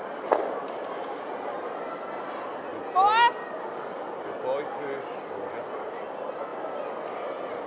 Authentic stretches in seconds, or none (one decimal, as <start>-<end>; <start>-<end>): 0.0-7.7